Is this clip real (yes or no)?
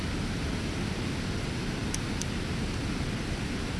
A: yes